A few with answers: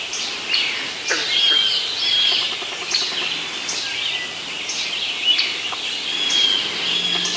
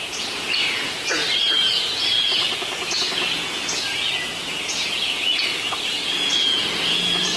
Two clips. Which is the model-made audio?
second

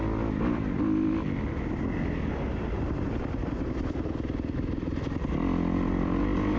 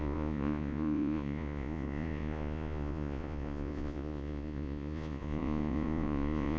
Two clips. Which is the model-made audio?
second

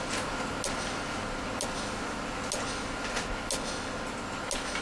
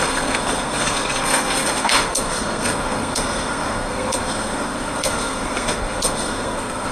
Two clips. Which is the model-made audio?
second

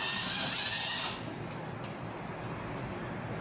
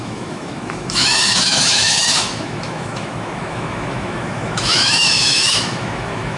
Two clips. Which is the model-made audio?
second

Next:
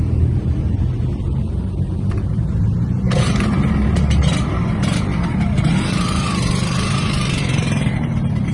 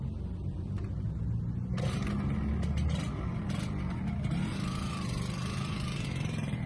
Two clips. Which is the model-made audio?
first